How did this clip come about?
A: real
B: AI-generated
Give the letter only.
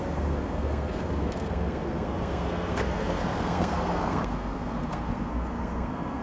B